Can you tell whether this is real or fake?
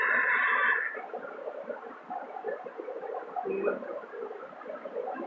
real